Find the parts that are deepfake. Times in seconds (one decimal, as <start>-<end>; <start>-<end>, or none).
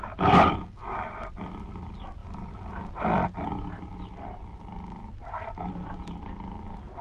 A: none